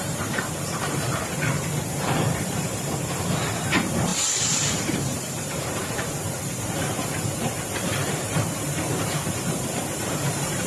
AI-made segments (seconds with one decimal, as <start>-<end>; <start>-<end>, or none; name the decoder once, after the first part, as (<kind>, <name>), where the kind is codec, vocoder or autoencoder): 0.0-10.7 (vocoder, BigVGAN v2)